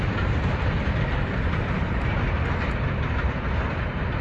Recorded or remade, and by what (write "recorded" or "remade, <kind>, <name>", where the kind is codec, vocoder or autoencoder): recorded